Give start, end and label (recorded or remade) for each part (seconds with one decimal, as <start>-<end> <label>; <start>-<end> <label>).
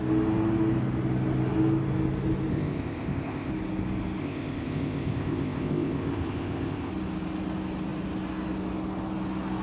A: 0.0-2.5 recorded; 2.5-3.5 remade; 3.5-4.2 recorded; 4.2-6.9 remade; 6.9-9.6 recorded